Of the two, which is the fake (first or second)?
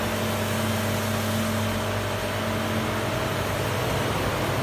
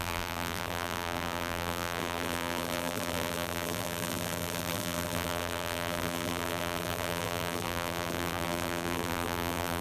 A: second